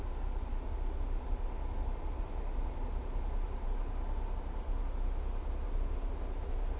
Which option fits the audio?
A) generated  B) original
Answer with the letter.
B